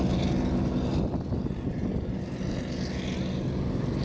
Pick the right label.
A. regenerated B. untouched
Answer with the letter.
B